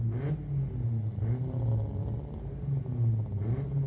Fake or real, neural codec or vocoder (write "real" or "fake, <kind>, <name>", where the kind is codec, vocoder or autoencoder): real